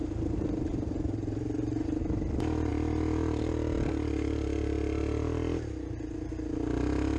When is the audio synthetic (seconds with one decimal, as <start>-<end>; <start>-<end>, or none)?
0.0-2.0

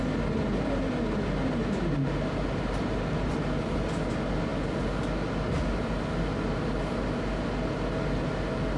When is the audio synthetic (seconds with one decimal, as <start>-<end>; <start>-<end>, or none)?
none

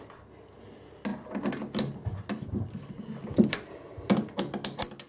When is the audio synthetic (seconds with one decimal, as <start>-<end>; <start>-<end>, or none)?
3.3-4.1

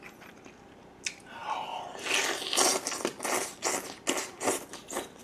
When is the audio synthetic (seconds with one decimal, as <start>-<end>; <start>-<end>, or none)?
none

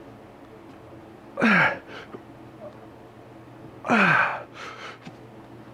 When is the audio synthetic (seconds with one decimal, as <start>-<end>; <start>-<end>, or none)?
4.3-5.1

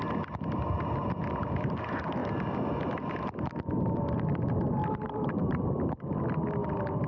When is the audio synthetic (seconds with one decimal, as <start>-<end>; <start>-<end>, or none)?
4.8-5.7

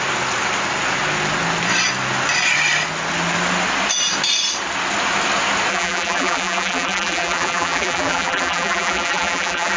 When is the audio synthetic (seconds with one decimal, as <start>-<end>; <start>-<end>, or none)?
5.7-9.8